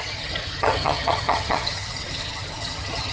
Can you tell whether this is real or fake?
fake